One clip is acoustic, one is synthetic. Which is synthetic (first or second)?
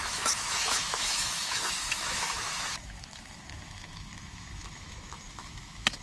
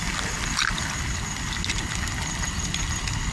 first